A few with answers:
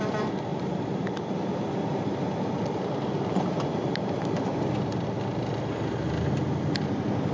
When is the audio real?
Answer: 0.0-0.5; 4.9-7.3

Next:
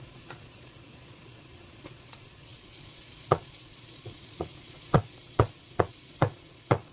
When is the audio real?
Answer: none